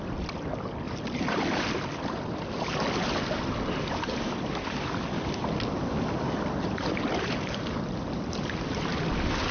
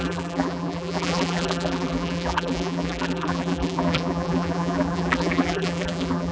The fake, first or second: second